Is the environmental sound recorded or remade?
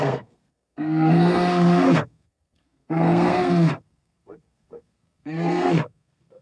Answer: remade